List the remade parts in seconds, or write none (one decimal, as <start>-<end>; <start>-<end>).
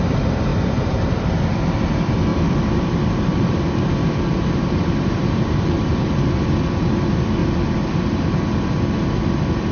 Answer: 0.5-1.2; 2.3-6.3; 7.4-8.4